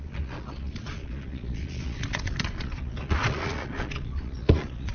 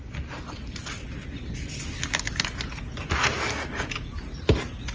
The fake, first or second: first